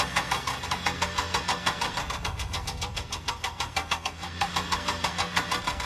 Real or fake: fake